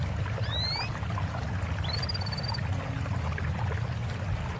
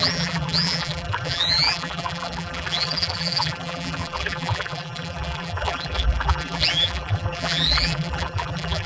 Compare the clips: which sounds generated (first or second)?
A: second